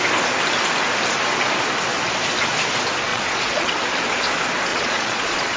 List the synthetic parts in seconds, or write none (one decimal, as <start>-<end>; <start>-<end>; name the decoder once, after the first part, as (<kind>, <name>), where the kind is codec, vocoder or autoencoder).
3.1-3.7 (vocoder, Vocos); 4.7-5.6